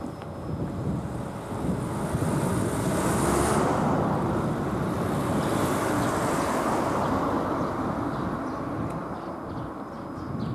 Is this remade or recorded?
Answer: recorded